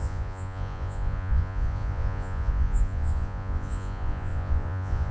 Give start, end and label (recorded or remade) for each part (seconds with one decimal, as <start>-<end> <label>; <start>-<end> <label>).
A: 0.0-5.1 remade